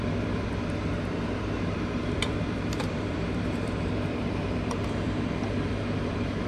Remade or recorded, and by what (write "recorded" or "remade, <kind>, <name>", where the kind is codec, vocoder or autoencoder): remade, vocoder, BigVGAN v2